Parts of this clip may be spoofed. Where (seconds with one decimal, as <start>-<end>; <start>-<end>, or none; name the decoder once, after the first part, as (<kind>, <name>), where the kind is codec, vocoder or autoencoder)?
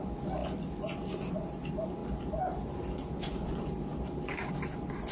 none